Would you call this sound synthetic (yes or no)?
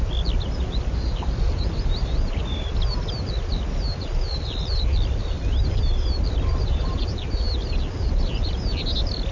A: no